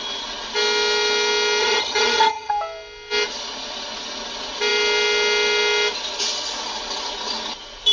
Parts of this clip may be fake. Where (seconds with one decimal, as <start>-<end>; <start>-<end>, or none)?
1.6-2.5